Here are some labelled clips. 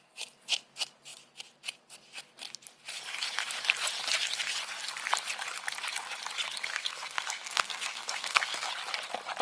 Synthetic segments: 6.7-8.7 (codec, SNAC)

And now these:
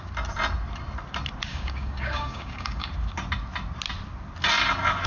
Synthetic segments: 1.5-2.9 (codec, DAC)

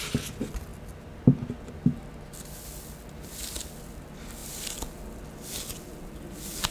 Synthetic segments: 4.4-5.5 (vocoder, BigVGAN v2)